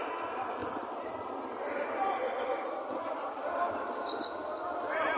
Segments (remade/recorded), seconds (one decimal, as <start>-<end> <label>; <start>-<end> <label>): 0.0-5.2 recorded